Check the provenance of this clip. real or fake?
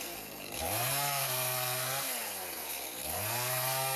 fake